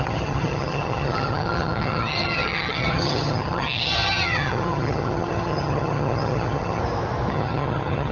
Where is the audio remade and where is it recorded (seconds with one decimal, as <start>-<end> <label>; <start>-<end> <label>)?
0.0-6.8 remade; 6.8-7.3 recorded; 7.3-8.1 remade